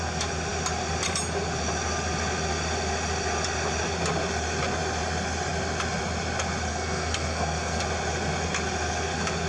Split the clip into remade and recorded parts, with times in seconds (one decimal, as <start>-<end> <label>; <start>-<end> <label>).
0.0-6.7 recorded; 6.7-7.8 remade; 7.8-9.5 recorded